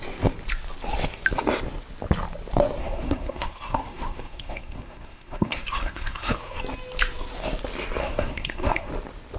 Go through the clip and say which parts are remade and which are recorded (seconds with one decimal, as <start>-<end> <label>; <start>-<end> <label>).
0.0-2.8 recorded; 2.8-6.6 remade; 6.6-8.0 recorded; 8.0-8.9 remade; 8.9-9.4 recorded